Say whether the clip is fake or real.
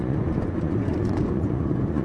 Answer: fake